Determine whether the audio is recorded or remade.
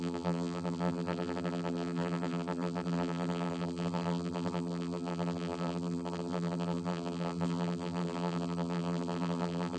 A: remade